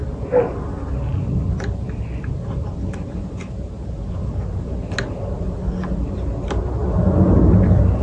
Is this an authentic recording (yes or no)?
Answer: yes